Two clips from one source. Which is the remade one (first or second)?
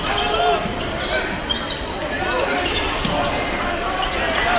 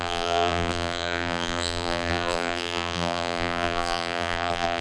second